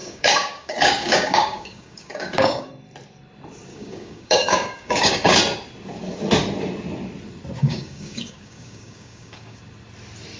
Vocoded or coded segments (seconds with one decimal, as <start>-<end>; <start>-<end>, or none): 0.0-2.7; 3.7-5.4; 7.6-9.6